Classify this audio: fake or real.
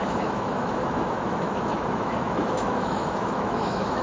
fake